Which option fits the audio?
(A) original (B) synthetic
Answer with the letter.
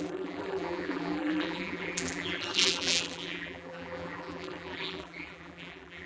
B